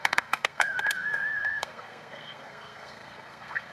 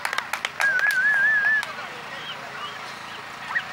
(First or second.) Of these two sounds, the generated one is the first